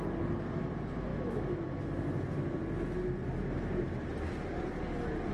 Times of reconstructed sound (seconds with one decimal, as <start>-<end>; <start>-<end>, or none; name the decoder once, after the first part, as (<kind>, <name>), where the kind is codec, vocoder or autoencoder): 1.1-1.8 (autoencoder, DAC-VAE)